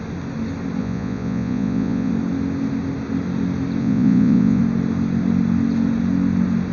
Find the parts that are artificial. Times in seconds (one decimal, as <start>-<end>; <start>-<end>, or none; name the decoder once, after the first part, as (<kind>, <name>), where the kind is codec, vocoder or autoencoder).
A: 0.8-2.1 (vocoder, Vocos); 3.8-4.6